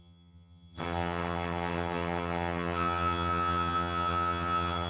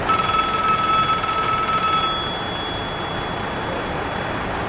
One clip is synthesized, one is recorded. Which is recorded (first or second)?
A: second